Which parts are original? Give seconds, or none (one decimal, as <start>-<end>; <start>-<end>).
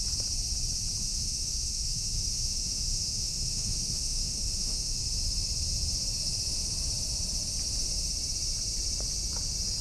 0.0-1.0; 5.0-9.8